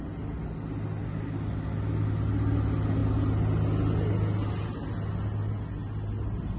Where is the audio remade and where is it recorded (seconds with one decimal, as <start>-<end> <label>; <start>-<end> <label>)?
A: 0.0-6.6 recorded